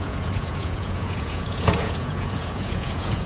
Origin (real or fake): fake